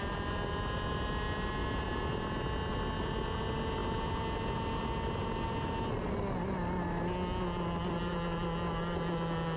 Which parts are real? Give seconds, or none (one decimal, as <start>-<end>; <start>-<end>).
0.0-9.6